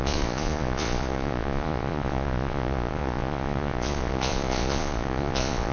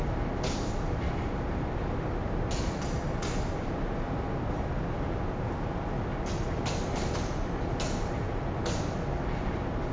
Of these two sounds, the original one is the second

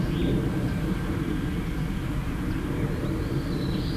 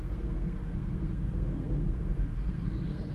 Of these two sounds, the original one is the first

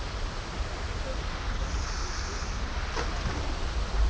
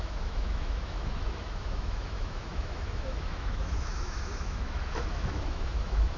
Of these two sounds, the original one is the first